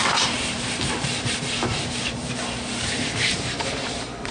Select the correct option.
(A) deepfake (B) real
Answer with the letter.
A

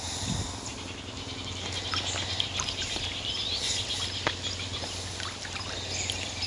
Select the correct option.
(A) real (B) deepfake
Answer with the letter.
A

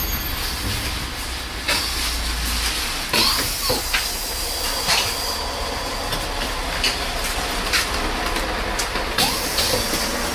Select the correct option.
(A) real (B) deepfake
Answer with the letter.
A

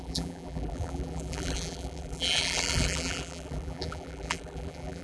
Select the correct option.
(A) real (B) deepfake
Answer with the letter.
B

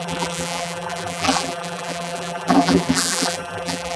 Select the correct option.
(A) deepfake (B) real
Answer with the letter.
A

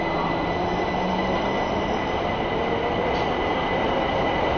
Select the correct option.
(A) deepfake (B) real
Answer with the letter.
B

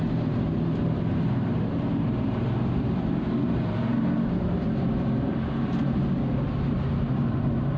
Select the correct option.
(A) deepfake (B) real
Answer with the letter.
A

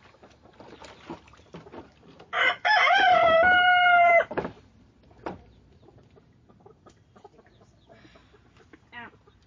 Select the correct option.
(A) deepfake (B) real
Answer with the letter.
A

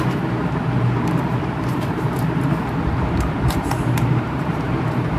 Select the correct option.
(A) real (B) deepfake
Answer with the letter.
B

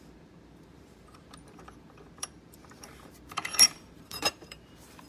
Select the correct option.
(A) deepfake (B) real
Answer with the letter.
A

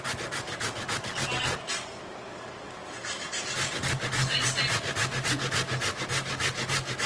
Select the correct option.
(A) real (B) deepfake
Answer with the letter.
A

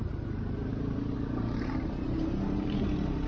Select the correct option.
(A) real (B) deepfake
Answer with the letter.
B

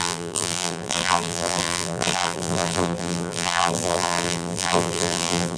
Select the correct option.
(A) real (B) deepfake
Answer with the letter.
B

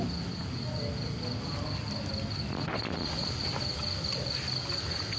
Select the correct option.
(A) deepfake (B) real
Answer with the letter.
B